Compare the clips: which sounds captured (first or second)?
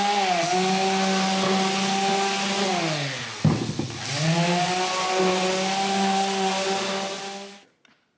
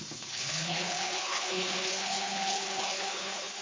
first